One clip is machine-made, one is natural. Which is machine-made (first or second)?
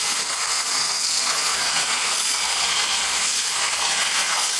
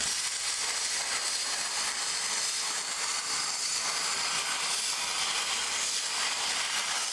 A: first